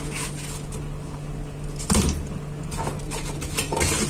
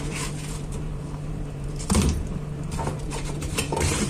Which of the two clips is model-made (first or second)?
second